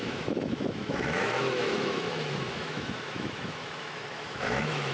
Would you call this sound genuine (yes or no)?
no